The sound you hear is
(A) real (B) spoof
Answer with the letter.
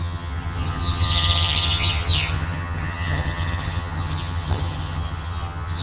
B